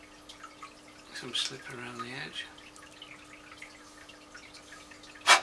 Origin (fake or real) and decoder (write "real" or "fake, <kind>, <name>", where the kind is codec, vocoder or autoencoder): real